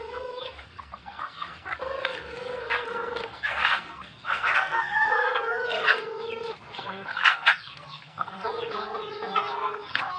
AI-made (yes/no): yes